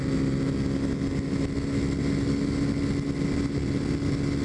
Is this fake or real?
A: real